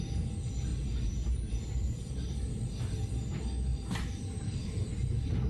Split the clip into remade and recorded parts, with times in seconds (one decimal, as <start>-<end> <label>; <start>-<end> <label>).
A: 0.0-0.7 recorded; 0.7-2.3 remade; 2.3-3.7 recorded; 3.7-4.6 remade; 4.6-5.5 recorded